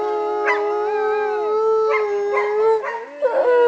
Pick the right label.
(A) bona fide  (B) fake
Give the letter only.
A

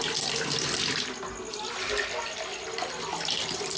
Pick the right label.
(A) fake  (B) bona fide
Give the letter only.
B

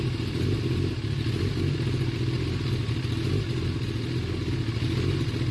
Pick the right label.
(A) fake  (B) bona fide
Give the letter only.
B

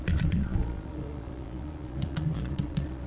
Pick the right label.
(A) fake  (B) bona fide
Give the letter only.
A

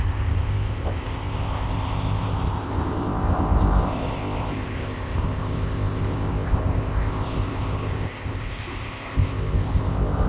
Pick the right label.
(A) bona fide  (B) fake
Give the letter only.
B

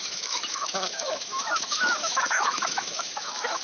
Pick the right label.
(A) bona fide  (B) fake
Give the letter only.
B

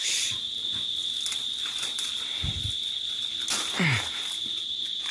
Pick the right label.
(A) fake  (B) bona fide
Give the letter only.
B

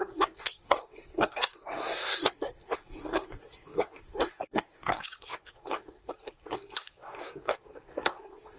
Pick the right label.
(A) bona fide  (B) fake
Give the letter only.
B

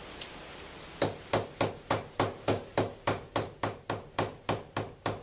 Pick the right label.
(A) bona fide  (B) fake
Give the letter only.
A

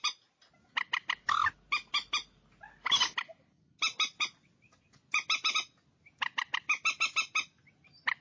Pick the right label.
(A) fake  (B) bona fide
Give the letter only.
B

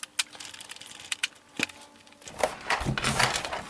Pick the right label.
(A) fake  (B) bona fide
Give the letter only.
B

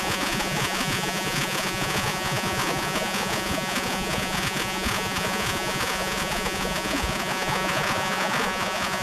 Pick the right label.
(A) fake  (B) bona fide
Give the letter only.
A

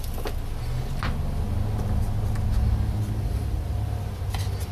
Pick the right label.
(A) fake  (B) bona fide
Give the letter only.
B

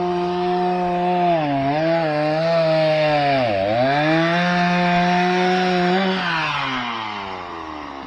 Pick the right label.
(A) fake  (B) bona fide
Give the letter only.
B